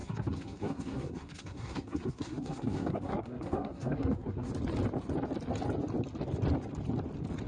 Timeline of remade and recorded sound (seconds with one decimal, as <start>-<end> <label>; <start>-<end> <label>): 0.0-4.5 remade; 4.5-7.5 recorded